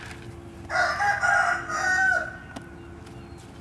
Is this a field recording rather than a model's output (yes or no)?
yes